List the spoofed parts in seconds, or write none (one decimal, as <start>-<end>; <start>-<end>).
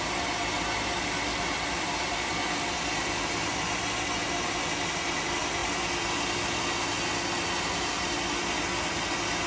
none